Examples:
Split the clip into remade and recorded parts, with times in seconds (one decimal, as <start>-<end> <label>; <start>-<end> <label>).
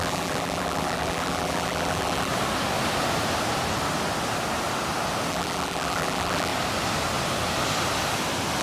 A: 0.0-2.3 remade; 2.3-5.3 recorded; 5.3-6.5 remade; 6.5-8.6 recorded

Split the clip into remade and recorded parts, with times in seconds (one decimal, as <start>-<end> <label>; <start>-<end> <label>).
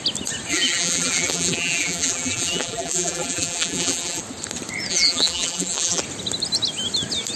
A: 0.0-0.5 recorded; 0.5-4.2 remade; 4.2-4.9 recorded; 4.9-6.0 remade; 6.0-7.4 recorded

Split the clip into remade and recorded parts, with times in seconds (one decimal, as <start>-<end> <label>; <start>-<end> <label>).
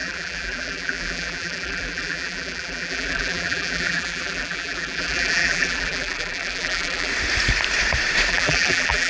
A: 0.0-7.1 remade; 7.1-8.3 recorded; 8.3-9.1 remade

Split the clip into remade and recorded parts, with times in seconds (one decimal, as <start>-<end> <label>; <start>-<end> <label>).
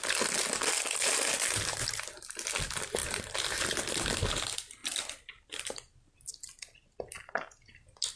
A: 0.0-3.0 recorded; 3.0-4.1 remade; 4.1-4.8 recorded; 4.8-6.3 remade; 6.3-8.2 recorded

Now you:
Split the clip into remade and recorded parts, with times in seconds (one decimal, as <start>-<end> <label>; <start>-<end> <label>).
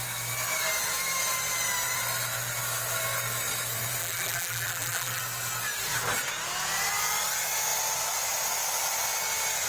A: 0.0-4.0 recorded; 4.0-5.2 remade; 5.2-9.7 recorded